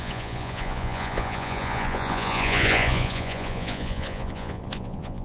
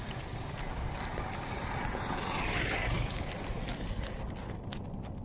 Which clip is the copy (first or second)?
first